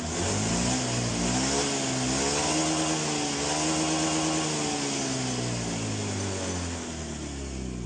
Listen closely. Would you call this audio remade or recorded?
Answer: recorded